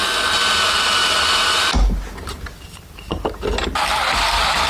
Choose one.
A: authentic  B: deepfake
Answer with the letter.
A